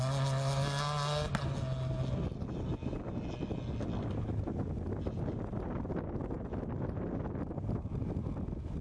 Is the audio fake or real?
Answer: real